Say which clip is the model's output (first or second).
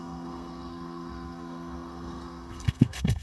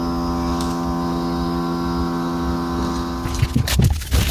first